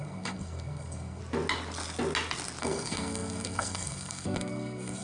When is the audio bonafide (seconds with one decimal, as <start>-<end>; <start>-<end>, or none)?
1.2-2.6